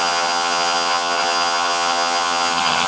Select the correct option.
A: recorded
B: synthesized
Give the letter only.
B